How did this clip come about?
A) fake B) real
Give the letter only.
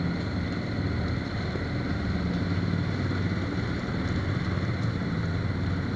B